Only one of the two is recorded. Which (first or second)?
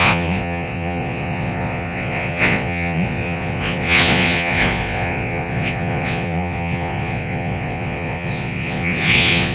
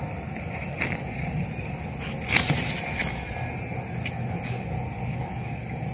second